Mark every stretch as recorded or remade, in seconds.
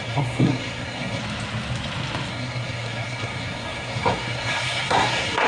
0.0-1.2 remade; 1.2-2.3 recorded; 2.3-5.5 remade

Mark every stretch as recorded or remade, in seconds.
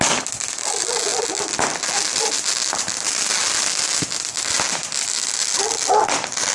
0.0-5.4 recorded; 5.4-6.5 remade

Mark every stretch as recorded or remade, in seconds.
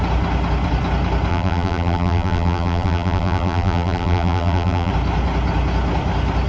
0.0-1.3 recorded; 1.3-4.9 remade; 4.9-6.5 recorded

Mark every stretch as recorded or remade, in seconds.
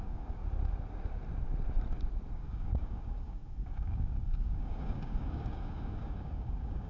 0.0-0.4 remade; 0.4-2.3 recorded; 2.3-6.9 remade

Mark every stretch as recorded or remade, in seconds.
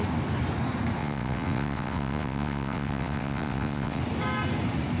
0.0-1.0 recorded; 1.0-4.0 remade; 4.0-5.0 recorded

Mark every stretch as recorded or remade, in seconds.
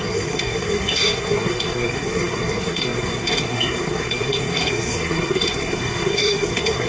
0.0-6.9 remade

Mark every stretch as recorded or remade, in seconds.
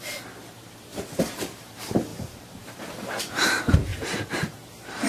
0.0-0.4 remade; 0.4-1.2 recorded; 1.2-3.9 remade; 3.9-5.1 recorded